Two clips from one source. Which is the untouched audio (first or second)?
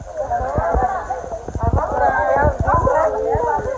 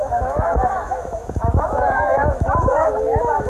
first